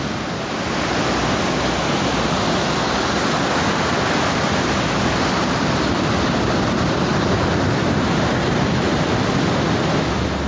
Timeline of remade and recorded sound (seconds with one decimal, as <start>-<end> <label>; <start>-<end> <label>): 0.0-10.5 recorded